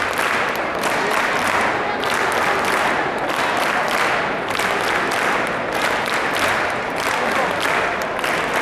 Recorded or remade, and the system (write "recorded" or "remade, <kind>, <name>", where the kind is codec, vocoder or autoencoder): recorded